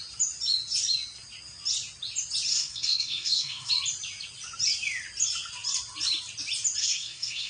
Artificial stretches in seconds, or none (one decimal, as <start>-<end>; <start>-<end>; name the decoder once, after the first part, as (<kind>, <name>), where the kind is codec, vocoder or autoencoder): 2.5-3.7 (codec, SNAC); 6.8-7.5